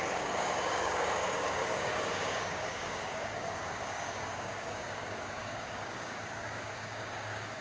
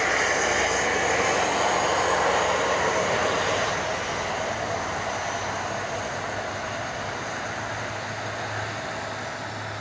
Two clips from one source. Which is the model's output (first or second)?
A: first